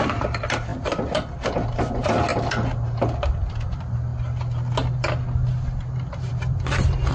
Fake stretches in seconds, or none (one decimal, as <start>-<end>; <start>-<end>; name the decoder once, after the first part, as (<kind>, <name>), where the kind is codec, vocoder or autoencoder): 0.0-2.3 (vocoder, BigVGAN v2); 3.3-4.1; 6.3-7.1